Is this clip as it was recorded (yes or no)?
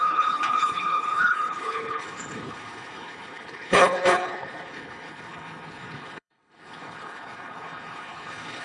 no